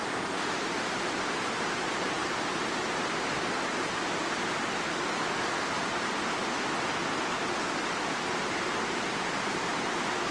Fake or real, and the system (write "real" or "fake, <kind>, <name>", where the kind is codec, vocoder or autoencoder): real